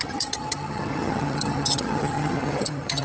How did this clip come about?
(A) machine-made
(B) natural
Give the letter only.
A